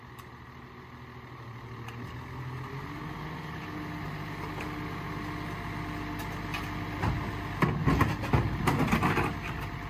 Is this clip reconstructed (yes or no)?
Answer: no